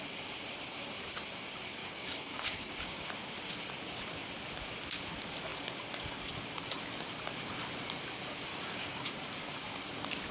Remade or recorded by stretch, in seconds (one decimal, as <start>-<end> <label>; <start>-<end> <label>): 0.0-1.8 recorded; 1.8-3.1 remade; 3.1-8.5 recorded; 8.5-9.1 remade; 9.1-10.3 recorded